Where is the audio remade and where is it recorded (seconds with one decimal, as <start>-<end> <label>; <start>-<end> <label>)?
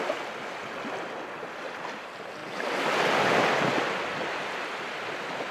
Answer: 0.0-5.5 recorded